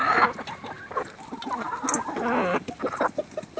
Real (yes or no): yes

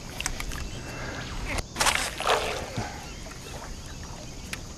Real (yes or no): yes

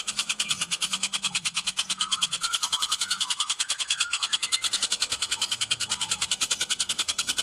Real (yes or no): no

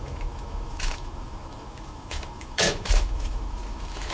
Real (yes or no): no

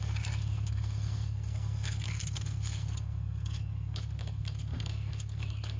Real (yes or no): no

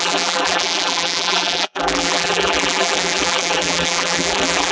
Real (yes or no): no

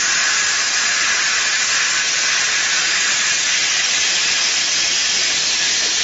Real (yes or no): yes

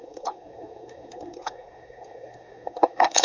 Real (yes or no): no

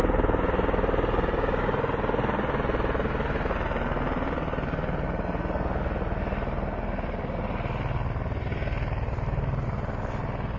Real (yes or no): yes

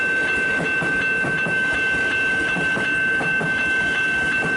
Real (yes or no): yes